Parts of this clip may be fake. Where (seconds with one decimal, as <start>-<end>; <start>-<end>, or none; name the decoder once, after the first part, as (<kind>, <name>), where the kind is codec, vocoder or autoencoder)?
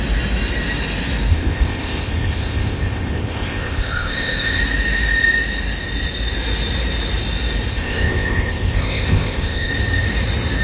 1.3-4.6 (codec, ZipCodec); 7.7-9.7